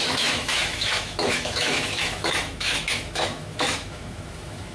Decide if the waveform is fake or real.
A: fake